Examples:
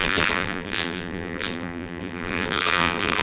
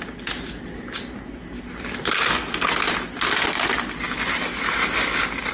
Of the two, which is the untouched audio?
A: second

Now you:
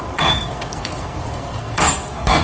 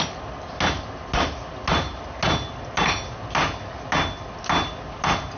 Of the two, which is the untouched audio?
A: second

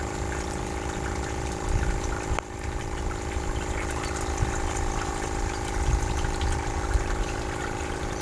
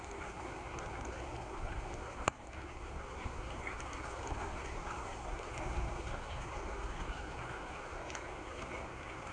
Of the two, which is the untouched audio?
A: first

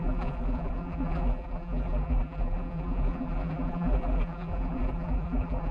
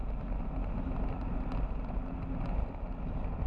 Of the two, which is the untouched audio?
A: second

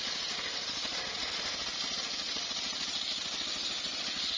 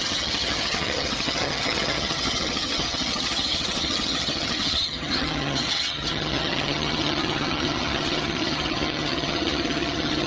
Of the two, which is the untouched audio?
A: first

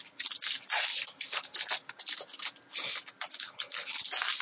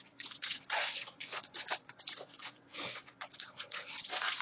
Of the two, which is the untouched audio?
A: first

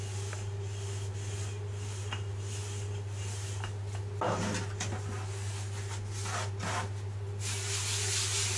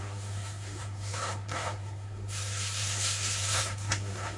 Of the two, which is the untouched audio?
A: first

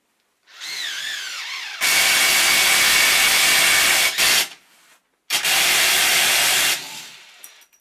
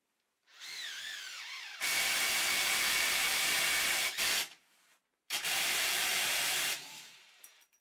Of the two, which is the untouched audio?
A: first